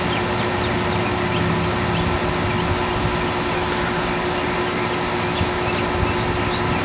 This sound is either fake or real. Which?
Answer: real